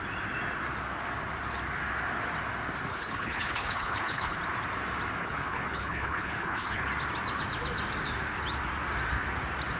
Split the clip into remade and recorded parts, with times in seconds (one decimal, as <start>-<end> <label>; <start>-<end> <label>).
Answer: 0.0-2.9 recorded; 2.9-4.4 remade; 4.4-5.2 recorded; 5.2-6.8 remade; 6.8-9.8 recorded